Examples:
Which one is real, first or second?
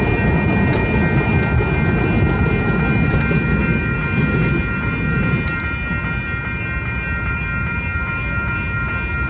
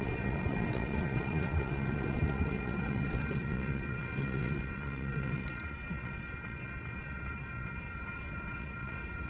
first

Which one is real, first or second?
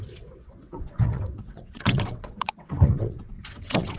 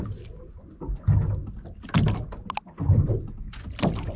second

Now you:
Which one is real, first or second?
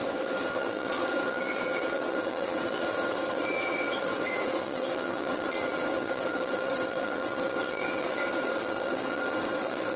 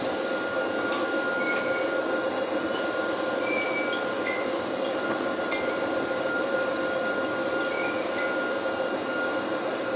second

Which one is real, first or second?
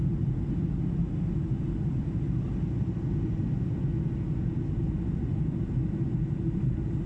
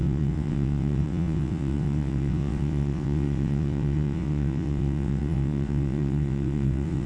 first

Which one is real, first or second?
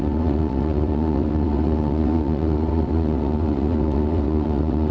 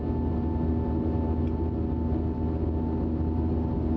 second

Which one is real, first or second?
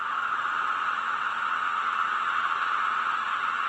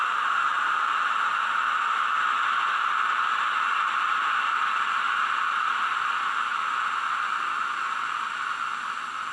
second